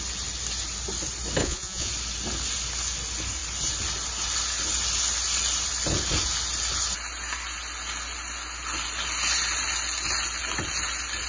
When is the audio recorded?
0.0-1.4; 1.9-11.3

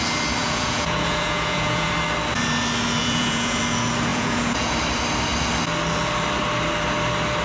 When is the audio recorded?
0.0-0.4; 1.9-3.0; 3.6-4.1; 4.7-7.4

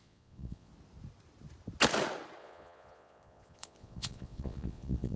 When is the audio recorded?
0.7-2.4